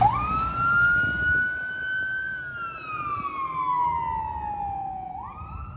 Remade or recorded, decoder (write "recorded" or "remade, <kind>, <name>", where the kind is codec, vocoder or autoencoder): recorded